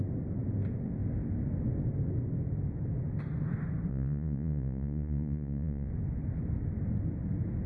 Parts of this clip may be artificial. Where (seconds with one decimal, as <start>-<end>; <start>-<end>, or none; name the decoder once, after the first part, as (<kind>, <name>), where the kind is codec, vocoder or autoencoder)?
3.9-5.9 (vocoder, Vocos)